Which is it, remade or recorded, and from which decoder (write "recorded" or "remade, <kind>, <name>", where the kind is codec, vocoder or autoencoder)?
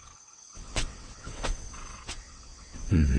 remade, vocoder, WaveNeXt